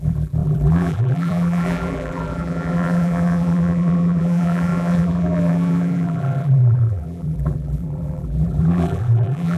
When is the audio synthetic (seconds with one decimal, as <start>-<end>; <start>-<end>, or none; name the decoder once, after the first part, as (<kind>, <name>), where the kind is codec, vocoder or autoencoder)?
0.0-9.6 (vocoder, BigVGAN v2)